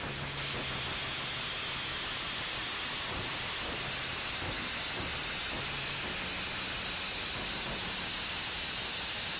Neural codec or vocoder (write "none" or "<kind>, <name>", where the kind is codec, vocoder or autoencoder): none